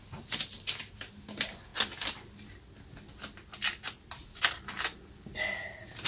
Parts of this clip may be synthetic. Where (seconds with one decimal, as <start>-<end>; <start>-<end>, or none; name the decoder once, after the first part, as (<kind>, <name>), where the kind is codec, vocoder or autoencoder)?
none